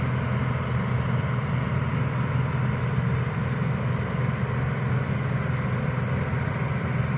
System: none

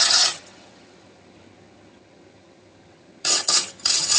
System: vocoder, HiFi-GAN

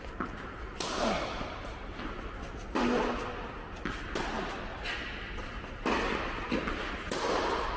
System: none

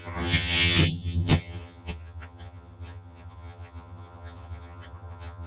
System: vocoder, HiFi-GAN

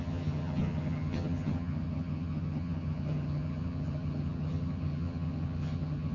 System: vocoder, HiFi-GAN